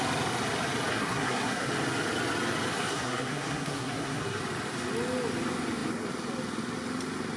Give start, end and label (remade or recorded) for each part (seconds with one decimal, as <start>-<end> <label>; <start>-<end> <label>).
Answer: 0.0-0.9 recorded; 0.9-1.7 remade; 1.7-2.7 recorded; 2.7-4.4 remade; 4.4-7.4 recorded